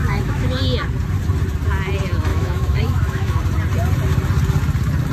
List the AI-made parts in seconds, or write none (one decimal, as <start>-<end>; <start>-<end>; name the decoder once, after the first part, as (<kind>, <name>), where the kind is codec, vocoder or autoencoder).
0.0-0.6 (autoencoder, DAC-VAE); 2.3-3.4